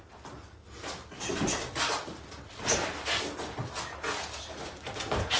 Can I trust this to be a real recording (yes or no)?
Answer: yes